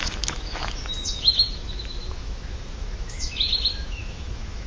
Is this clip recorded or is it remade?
remade